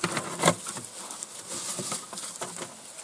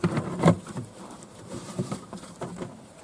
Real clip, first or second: first